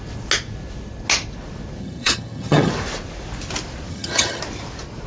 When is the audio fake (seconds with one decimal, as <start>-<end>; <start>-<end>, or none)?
1.8-2.7; 3.9-4.4